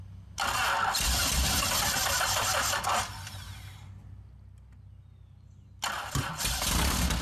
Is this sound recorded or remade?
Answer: recorded